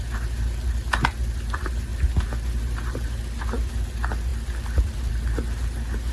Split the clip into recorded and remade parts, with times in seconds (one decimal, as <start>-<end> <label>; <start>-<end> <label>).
0.0-6.1 recorded